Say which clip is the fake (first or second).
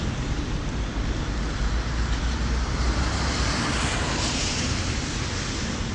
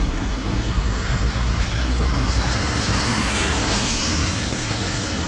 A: second